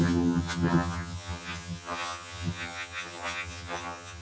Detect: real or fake fake